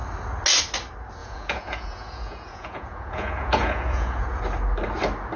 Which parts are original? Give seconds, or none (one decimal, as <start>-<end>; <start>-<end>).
0.0-1.2; 4.4-5.4

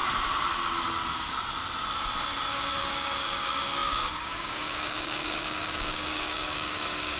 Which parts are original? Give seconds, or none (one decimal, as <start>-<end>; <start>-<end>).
0.0-2.5

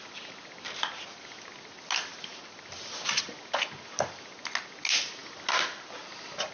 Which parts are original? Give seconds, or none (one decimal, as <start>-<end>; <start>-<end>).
0.0-6.5

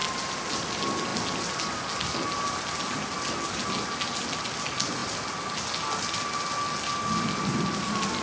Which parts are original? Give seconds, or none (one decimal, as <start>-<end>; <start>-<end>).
0.0-8.2

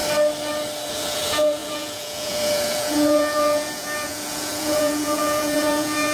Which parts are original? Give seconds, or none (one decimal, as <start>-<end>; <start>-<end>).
0.0-0.9

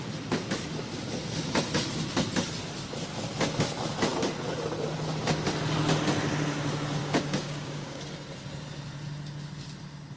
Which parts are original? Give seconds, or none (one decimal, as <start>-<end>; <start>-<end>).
0.0-7.0; 8.0-10.2